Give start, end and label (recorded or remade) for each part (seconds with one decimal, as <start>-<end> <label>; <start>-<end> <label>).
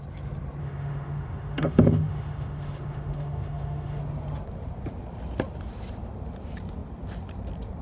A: 0.0-0.6 recorded; 0.6-4.0 remade; 4.0-7.8 recorded